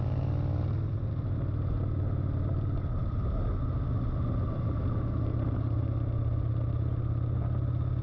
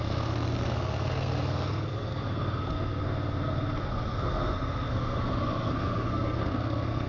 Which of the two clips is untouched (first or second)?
first